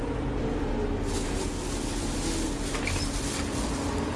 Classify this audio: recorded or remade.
recorded